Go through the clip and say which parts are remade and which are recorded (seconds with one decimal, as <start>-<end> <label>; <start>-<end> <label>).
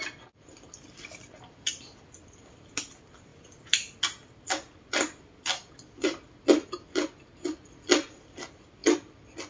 0.0-9.5 recorded